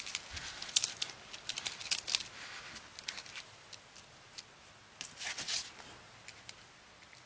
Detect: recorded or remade recorded